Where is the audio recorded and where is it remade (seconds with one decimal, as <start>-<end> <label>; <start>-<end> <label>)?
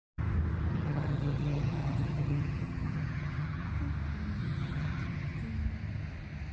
0.0-0.7 recorded; 0.7-3.7 remade; 3.7-4.4 recorded; 4.4-5.4 remade; 5.4-6.5 recorded